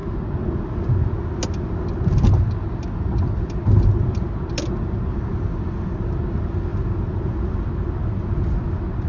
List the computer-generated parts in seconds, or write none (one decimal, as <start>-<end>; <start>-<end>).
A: none